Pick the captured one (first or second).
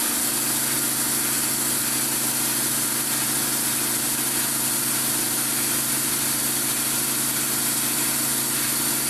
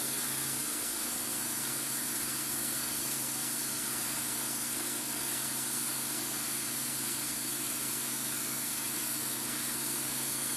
first